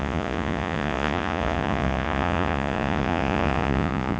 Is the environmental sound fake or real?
fake